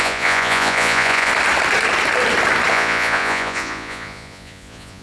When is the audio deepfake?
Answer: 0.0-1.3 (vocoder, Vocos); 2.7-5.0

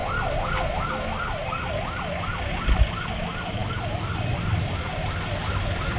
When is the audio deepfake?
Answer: none

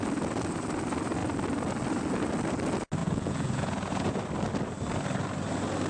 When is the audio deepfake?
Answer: 3.0-4.2 (vocoder, Vocos)

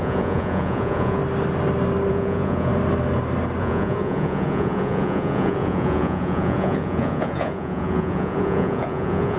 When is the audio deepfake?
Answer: 0.0-1.2 (vocoder, Vocos); 2.1-2.7; 3.6-9.4

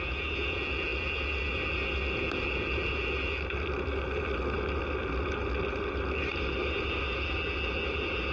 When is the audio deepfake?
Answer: none